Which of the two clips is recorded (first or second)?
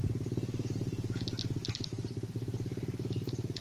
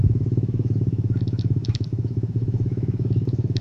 first